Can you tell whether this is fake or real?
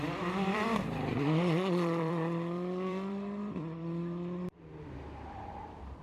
fake